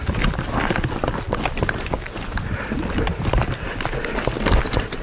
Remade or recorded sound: recorded